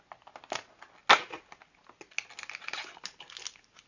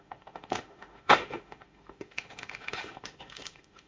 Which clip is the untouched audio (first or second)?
first